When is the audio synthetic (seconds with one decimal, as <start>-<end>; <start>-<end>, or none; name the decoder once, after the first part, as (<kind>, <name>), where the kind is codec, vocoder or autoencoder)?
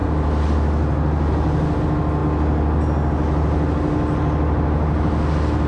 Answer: none